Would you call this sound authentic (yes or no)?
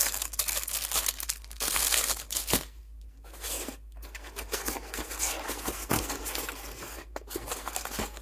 no